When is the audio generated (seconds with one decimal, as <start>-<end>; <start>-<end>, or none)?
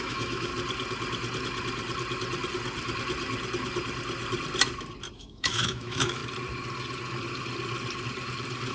0.0-0.5; 5.1-6.2